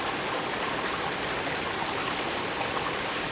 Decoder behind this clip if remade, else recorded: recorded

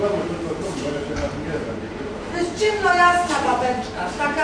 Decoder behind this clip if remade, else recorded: remade, vocoder, BigVGAN v2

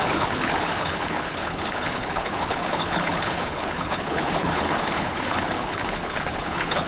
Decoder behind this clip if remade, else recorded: remade, codec, HILCodec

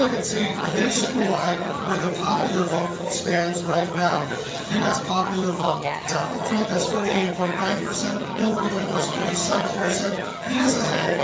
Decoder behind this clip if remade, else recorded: remade, vocoder, HiFi-GAN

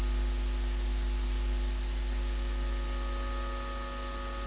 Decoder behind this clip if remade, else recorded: recorded